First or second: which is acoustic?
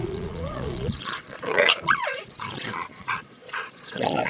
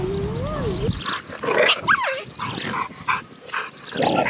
second